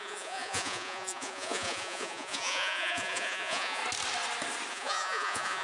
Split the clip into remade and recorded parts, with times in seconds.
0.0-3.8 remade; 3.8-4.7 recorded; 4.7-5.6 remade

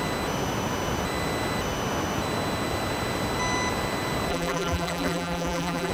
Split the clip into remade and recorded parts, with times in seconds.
0.0-4.3 recorded; 4.3-5.9 remade

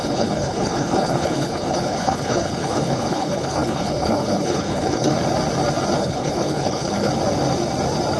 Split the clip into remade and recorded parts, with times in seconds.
0.0-5.1 remade; 5.1-6.0 recorded; 6.0-7.1 remade; 7.1-8.2 recorded

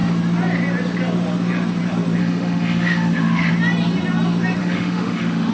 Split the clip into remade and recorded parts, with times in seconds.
0.0-2.2 recorded; 2.2-3.5 remade; 3.5-4.6 recorded; 4.6-5.5 remade